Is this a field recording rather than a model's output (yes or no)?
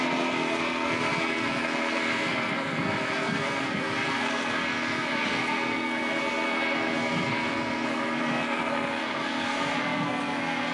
no